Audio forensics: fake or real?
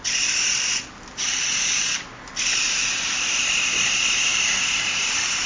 real